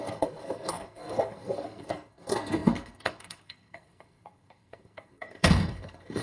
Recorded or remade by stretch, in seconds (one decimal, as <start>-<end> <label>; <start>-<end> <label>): 0.0-6.2 remade